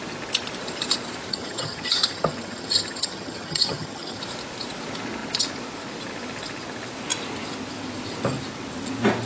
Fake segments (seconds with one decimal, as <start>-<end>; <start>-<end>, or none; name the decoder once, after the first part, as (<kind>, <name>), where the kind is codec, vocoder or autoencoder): 1.3-4.2 (vocoder, HiFi-GAN)